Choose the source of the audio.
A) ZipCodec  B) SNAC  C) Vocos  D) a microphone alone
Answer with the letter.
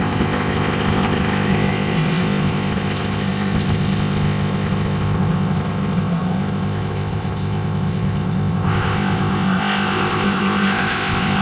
A